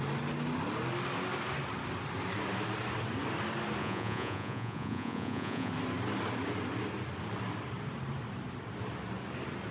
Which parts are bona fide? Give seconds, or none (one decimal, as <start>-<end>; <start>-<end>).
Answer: 0.0-3.8; 5.7-9.7